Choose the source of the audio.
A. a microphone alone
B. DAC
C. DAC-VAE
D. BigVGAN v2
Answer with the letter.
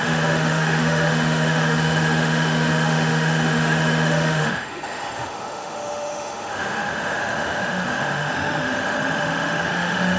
C